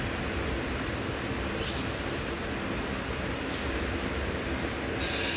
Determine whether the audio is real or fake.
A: real